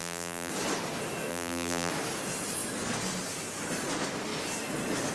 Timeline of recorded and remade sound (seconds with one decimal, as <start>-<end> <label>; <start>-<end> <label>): 0.0-0.5 remade; 0.5-1.3 recorded; 1.3-1.9 remade; 1.9-5.1 recorded